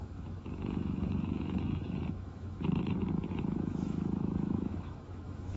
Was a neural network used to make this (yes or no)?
yes